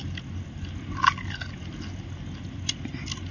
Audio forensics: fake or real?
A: real